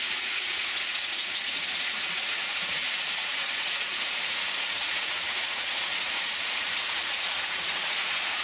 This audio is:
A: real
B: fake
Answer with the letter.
B